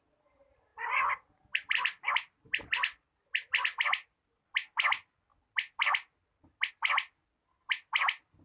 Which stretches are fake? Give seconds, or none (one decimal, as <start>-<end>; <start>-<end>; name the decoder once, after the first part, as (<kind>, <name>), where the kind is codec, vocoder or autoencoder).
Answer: none